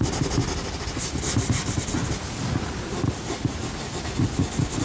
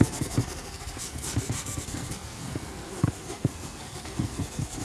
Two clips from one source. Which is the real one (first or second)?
first